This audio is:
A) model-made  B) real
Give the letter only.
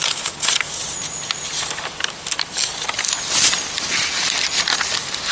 B